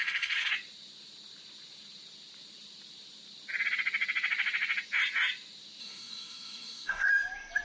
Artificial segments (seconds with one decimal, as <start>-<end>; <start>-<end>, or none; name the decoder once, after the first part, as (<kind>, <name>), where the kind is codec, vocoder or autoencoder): 0.0-0.5 (codec, SNAC); 5.8-7.1